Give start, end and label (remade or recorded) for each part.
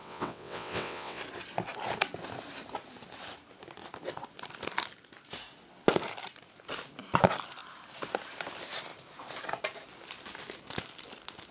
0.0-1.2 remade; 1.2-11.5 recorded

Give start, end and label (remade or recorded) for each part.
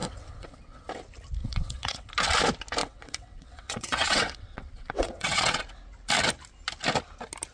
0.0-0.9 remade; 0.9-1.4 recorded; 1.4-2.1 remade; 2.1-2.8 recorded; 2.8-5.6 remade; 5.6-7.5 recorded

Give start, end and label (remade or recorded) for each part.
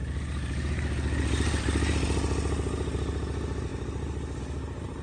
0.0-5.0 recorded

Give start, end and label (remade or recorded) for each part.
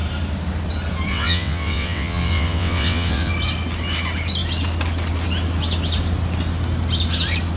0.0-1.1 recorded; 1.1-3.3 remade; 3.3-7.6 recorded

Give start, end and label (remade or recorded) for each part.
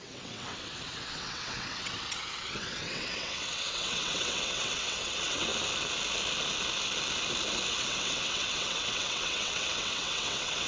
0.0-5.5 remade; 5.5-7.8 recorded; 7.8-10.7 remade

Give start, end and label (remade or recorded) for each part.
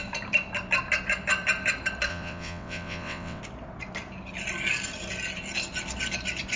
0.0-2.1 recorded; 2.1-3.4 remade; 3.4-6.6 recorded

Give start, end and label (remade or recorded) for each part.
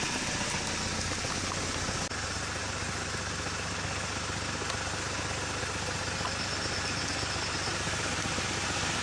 0.0-9.0 recorded